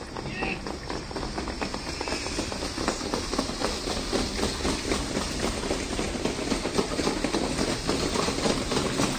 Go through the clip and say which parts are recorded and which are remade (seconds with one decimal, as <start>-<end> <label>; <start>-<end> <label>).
0.0-9.2 recorded